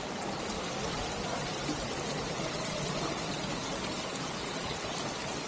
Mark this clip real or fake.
real